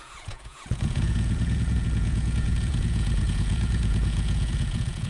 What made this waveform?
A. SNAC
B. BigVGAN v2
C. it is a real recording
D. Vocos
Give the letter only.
D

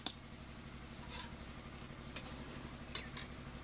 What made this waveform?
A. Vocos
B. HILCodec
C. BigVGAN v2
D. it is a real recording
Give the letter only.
D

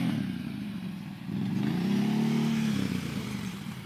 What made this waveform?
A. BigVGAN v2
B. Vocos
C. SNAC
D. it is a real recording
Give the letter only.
A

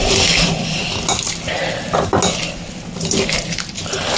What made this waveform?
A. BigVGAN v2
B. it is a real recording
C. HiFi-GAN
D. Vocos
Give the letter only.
B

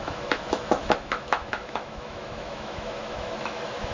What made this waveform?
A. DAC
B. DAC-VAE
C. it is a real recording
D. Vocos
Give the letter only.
B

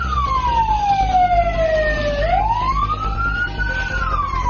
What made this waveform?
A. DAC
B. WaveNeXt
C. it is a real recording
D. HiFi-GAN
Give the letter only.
C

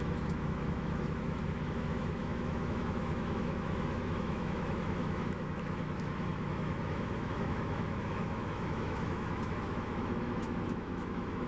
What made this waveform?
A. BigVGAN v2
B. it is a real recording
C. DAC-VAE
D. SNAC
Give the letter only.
C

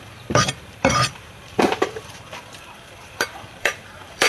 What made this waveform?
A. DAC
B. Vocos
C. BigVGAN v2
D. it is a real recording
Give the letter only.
C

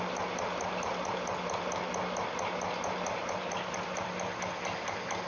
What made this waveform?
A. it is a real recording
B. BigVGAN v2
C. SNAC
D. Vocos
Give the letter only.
A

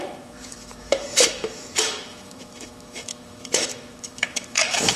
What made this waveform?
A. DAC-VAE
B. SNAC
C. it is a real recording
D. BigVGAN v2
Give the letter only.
A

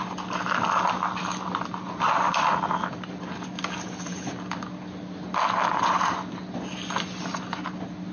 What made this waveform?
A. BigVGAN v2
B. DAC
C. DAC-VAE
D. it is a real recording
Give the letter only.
D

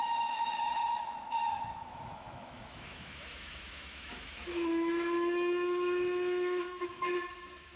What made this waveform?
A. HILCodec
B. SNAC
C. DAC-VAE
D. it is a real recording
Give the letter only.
C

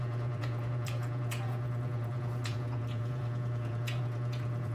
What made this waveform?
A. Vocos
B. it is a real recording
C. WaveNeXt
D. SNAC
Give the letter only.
A